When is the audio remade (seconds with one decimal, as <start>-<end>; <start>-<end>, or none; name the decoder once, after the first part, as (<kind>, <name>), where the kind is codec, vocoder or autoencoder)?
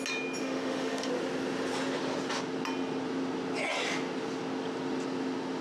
0.4-1.1 (autoencoder, DAC-VAE)